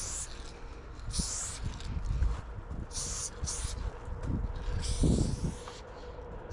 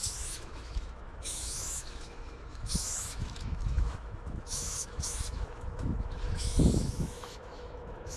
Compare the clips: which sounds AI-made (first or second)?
second